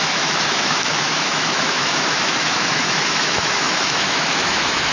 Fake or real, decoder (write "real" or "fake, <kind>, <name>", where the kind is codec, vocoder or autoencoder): fake, autoencoder, DAC-VAE